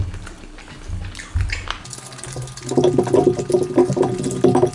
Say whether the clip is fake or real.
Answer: real